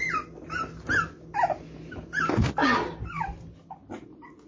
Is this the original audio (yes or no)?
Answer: yes